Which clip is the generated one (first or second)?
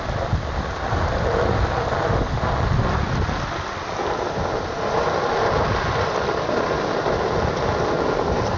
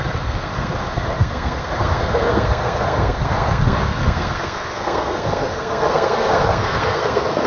second